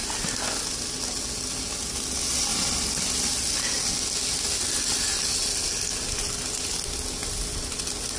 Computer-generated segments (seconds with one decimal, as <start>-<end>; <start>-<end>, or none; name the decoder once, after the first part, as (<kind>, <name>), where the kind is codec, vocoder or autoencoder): none